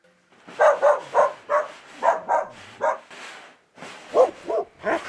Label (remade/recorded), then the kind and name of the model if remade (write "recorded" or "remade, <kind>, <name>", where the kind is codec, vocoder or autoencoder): recorded